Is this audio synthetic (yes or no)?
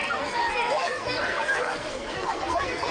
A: yes